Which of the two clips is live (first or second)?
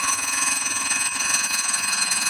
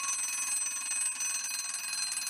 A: second